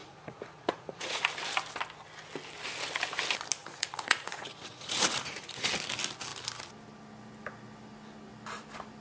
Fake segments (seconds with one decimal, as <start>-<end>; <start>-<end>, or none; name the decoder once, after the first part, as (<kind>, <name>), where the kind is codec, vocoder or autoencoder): 0.0-1.3 (vocoder, Vocos); 3.6-5.7